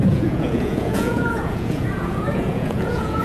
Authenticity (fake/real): fake